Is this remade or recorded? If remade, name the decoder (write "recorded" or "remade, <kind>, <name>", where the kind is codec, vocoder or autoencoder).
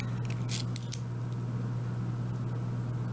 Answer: recorded